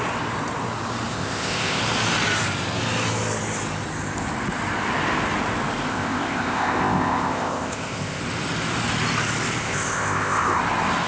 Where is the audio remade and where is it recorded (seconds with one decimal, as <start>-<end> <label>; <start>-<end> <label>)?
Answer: 0.0-1.1 recorded; 1.1-1.8 remade; 1.8-5.9 recorded; 5.9-8.2 remade; 8.2-9.6 recorded; 9.6-10.6 remade; 10.6-11.1 recorded